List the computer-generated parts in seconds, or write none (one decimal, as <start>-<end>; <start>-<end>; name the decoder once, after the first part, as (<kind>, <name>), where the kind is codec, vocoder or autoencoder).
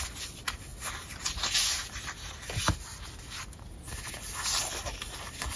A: none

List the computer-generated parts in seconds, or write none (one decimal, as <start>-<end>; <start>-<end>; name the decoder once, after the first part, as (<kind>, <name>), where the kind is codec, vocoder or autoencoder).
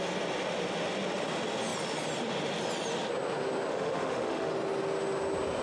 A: 3.7-4.5 (autoencoder, DAC-VAE)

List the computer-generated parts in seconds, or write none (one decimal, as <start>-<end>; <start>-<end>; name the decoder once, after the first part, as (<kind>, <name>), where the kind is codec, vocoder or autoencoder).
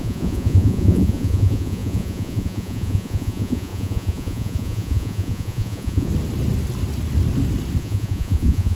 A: 0.0-6.1 (vocoder, Vocos); 7.8-8.8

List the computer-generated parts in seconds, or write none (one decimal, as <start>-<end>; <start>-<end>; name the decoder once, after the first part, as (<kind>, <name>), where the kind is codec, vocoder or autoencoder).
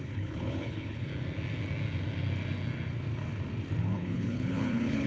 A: 0.0-1.1 (codec, HILCodec); 3.8-5.1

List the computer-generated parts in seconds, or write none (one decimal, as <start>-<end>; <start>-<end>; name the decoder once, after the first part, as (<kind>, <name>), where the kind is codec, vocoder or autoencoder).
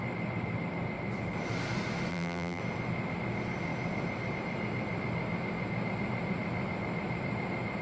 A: 2.1-2.6 (vocoder, BigVGAN v2)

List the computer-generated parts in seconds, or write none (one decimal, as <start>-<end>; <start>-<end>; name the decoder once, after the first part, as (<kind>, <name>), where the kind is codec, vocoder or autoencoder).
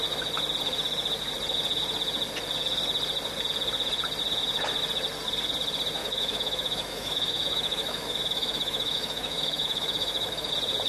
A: 6.0-10.5 (autoencoder, DAC-VAE)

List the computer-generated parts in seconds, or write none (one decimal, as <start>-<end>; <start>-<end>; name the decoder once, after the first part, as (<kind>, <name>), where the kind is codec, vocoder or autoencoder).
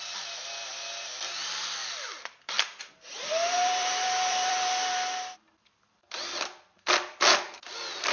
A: 1.8-2.6 (vocoder, BigVGAN v2); 3.1-7.2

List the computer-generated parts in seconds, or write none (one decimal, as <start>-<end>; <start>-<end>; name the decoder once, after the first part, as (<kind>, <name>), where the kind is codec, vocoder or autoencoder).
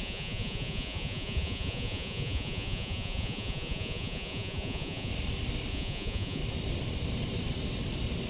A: 0.0-5.1 (vocoder, Vocos); 5.7-6.4